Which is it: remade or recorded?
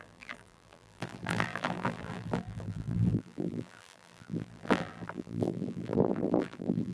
remade